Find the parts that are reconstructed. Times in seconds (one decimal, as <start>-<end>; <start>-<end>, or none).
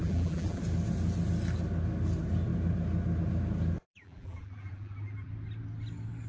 0.0-0.6; 3.9-5.3